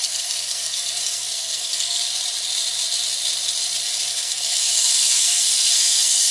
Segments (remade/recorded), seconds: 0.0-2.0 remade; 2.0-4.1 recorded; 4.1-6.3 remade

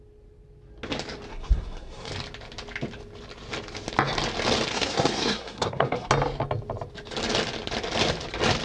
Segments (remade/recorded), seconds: 0.0-1.3 recorded; 1.3-2.1 remade; 2.1-4.7 recorded; 4.7-6.1 remade; 6.1-8.6 recorded